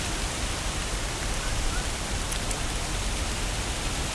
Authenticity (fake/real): real